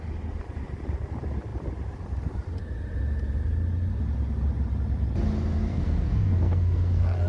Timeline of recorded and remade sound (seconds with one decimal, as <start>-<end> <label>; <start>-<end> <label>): 0.0-5.7 recorded; 5.7-7.3 remade